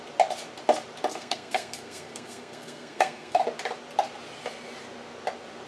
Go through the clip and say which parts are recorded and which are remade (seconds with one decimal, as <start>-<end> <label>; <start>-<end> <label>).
0.0-1.1 recorded; 1.1-3.4 remade; 3.4-5.7 recorded